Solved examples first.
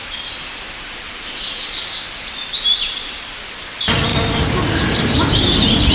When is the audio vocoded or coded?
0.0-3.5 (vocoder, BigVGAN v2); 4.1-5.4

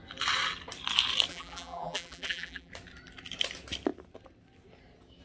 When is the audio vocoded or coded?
1.3-2.7 (vocoder, BigVGAN v2)